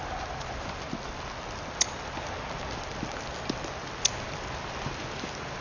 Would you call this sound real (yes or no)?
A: yes